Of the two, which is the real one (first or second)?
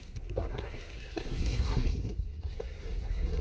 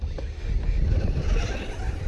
second